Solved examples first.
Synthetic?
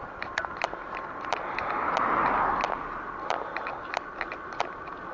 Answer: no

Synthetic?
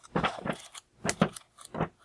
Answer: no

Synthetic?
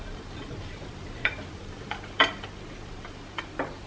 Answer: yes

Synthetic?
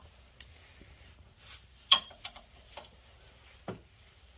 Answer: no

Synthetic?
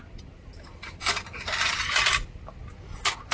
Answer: no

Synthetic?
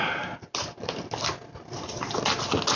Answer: no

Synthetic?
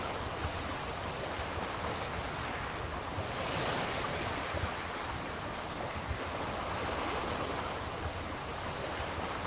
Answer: no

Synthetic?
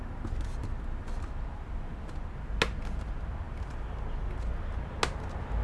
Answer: no